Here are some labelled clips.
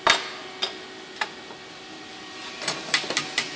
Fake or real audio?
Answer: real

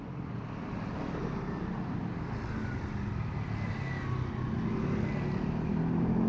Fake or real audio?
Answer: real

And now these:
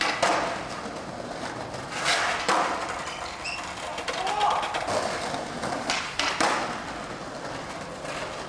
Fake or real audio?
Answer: real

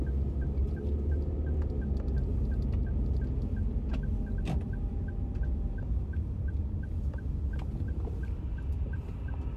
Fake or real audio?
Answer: real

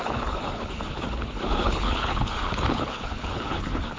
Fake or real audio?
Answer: fake